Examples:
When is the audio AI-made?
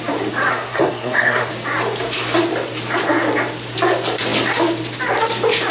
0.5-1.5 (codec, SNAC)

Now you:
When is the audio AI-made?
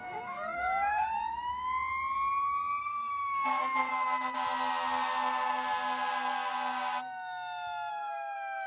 0.0-1.2 (codec, SNAC); 2.8-3.9; 7.9-8.7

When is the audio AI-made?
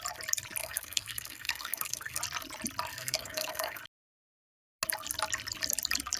0.6-2.2 (codec, SNAC); 2.9-3.8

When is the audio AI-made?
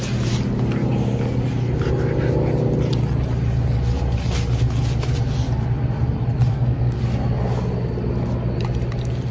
6.5-7.0 (codec, SNAC)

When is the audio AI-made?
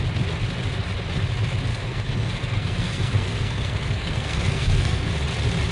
1.7-5.1 (codec, SNAC)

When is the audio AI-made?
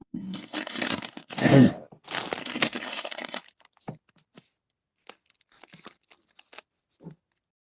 0.0-1.7 (codec, SNAC); 2.4-3.4